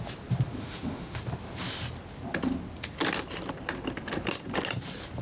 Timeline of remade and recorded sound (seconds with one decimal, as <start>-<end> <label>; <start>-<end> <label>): 0.0-0.6 recorded; 0.6-1.2 remade; 1.2-5.2 recorded